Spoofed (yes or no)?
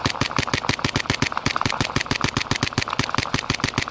no